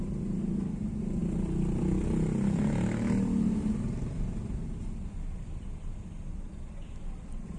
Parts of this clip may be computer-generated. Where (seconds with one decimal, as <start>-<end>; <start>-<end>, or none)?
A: none